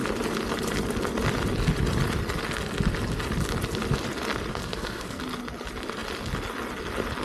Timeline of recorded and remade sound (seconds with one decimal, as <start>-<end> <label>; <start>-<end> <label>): 0.0-4.5 recorded; 4.5-5.2 remade; 5.2-7.2 recorded